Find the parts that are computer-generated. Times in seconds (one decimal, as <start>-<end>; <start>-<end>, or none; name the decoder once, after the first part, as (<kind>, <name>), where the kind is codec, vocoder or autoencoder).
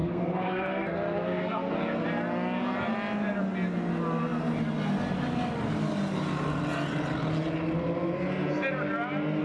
0.0-1.7 (codec, SNAC)